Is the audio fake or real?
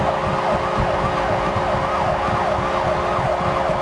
real